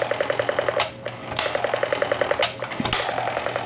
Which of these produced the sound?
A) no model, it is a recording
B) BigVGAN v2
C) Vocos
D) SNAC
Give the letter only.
A